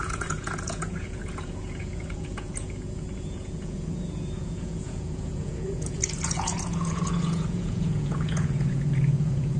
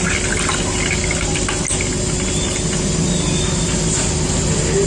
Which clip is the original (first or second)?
second